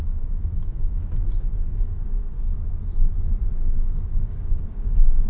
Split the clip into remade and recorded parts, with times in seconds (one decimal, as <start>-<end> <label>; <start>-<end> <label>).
0.0-2.5 remade; 2.5-3.5 recorded; 3.5-5.3 remade